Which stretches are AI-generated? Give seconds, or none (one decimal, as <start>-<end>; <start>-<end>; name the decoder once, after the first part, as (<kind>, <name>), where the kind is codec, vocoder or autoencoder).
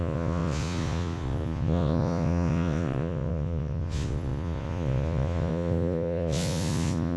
0.0-7.2 (vocoder, Vocos)